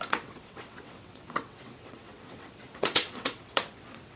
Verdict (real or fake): fake